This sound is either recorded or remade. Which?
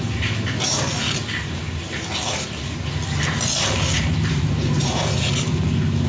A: recorded